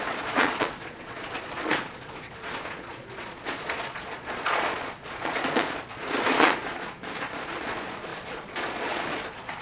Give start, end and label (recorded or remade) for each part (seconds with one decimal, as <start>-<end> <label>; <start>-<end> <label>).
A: 0.0-9.6 remade